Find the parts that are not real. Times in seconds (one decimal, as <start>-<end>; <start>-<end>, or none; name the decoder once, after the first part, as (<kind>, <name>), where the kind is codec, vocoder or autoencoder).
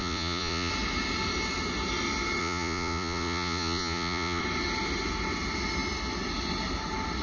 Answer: 0.0-0.7 (vocoder, Vocos); 2.4-4.4